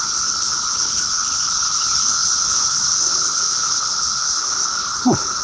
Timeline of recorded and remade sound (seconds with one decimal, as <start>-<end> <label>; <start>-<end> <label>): 0.0-5.4 remade